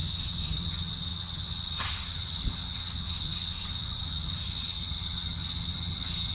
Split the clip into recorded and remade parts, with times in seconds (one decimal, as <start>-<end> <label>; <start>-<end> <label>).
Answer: 0.0-6.3 remade